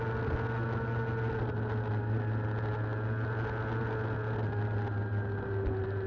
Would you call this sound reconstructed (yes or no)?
no